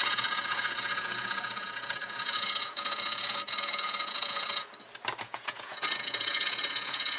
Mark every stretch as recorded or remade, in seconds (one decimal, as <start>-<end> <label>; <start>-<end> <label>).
0.0-4.7 remade; 4.7-5.2 recorded; 5.2-7.2 remade

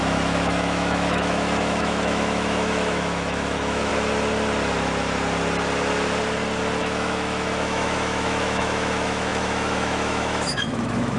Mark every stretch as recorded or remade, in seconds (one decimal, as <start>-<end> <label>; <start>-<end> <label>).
0.0-3.9 remade; 3.9-6.8 recorded; 6.8-11.2 remade

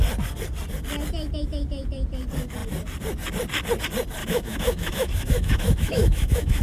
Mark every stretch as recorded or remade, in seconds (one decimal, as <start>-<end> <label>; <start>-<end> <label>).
0.0-4.2 recorded; 4.2-6.6 remade

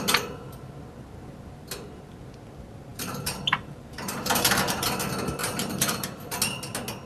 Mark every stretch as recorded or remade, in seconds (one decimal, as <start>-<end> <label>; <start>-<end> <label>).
0.0-2.9 recorded; 2.9-4.4 remade; 4.4-5.4 recorded; 5.4-6.3 remade; 6.3-7.1 recorded

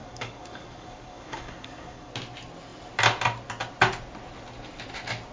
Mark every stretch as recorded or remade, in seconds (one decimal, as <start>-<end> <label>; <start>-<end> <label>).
0.0-2.1 remade; 2.1-5.3 recorded

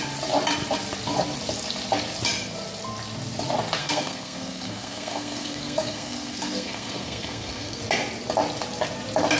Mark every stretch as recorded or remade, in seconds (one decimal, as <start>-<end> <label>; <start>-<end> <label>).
0.0-3.8 recorded; 3.8-7.8 remade; 7.8-9.4 recorded

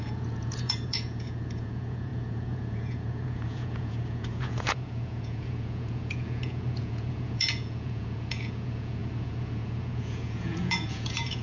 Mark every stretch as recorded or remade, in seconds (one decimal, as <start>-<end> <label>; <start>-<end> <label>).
0.0-11.4 remade